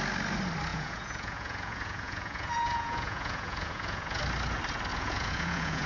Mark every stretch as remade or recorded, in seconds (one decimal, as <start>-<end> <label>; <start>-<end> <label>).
0.0-0.7 recorded; 0.7-4.2 remade; 4.2-4.9 recorded; 4.9-5.9 remade